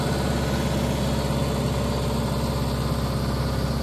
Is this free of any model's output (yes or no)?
yes